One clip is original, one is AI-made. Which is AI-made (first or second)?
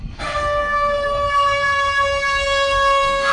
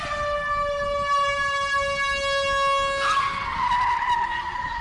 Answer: first